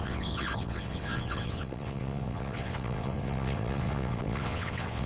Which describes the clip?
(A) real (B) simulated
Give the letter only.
B